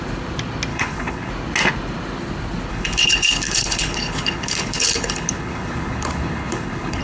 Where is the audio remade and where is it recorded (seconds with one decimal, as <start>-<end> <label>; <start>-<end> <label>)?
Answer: 0.0-0.7 recorded; 0.7-1.3 remade; 1.3-2.7 recorded; 2.7-7.0 remade